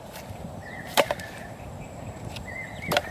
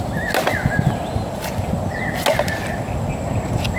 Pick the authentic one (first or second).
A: second